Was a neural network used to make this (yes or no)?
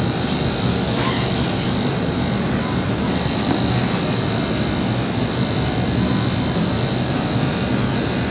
yes